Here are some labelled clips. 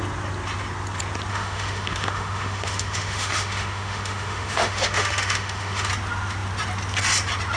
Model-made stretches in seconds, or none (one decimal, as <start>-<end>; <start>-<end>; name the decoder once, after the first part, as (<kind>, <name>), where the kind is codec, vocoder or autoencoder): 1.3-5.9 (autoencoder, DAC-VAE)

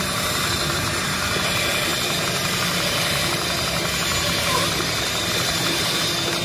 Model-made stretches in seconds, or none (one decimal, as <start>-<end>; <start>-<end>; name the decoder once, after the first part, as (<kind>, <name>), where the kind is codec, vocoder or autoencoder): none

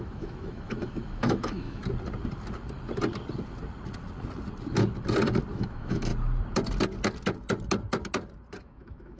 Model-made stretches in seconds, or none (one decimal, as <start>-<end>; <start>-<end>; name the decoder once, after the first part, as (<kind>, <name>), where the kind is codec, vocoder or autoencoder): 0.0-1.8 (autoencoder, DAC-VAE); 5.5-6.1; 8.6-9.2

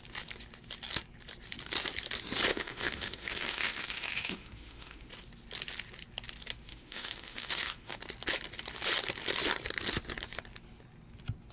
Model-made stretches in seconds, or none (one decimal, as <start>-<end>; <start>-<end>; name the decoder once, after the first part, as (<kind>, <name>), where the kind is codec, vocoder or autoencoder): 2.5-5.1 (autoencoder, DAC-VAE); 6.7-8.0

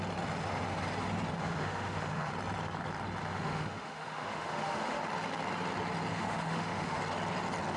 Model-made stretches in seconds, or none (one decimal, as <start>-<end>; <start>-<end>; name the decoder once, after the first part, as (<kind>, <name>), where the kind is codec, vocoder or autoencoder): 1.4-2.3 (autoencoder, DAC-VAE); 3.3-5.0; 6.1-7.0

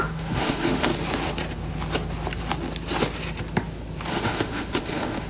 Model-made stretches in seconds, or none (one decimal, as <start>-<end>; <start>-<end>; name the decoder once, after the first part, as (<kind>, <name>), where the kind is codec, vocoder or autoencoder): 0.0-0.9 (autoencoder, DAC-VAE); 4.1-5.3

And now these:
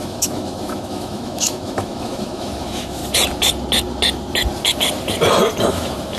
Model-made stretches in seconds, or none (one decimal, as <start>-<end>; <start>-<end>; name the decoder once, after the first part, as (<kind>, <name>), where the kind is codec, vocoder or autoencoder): 0.0-3.0 (autoencoder, DAC-VAE); 5.7-6.2